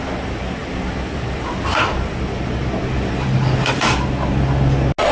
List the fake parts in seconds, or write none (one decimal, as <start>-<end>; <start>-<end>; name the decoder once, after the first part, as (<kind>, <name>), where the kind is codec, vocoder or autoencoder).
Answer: none